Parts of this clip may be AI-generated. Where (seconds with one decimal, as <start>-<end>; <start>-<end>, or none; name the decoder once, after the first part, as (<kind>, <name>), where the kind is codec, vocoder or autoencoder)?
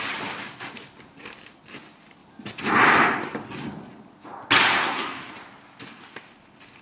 4.8-5.3 (codec, SNAC)